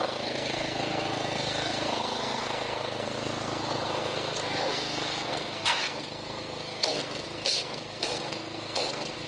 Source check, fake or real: fake